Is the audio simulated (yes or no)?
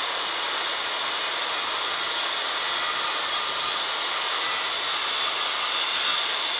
no